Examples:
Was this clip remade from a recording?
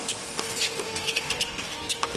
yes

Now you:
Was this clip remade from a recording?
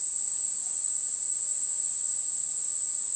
yes